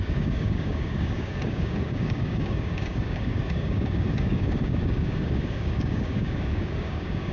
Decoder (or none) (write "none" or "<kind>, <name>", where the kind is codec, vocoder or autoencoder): codec, DAC